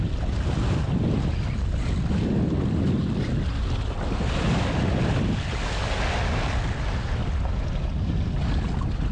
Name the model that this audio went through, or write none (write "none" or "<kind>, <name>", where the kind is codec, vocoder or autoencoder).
none